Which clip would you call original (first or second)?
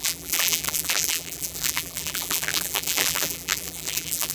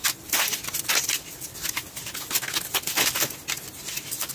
second